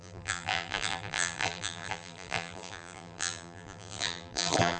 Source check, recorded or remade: remade